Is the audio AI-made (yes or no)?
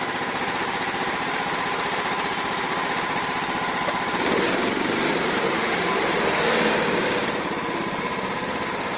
yes